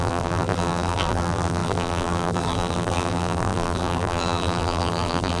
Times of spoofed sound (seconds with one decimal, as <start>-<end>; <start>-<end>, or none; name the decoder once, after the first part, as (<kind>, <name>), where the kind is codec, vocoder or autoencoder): 0.0-5.4 (vocoder, BigVGAN v2)